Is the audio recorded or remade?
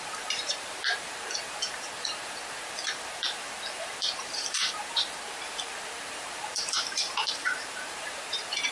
remade